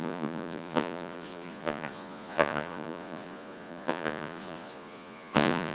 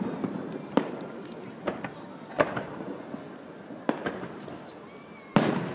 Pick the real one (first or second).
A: second